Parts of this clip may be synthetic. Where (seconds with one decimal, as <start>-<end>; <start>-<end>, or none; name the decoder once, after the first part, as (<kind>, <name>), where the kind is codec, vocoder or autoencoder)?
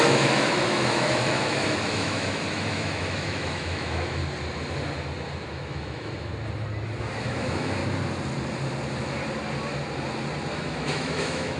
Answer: 0.0-4.2 (autoencoder, DAC-VAE); 5.5-6.3; 7.0-7.8; 10.5-11.6